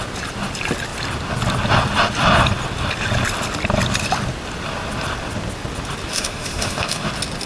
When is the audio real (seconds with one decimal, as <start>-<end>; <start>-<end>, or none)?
0.0-6.1; 7.1-7.5